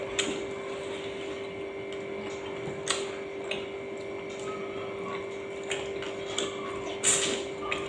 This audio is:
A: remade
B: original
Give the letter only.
B